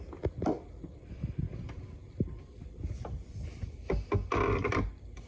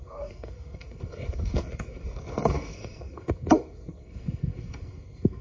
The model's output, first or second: second